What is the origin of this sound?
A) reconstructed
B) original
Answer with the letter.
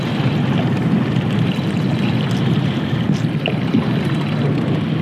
B